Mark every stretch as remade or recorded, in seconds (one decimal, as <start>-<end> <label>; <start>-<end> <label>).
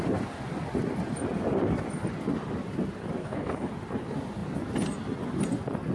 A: 0.0-3.2 recorded; 3.2-3.7 remade; 3.7-5.9 recorded